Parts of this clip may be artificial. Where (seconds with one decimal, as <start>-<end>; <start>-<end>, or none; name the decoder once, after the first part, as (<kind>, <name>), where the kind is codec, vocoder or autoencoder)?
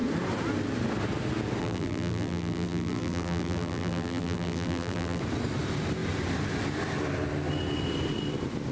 1.6-5.2 (vocoder, BigVGAN v2)